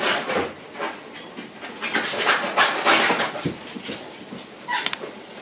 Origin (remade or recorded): recorded